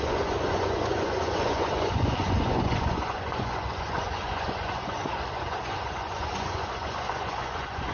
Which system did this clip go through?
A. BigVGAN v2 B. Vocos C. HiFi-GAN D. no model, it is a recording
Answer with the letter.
B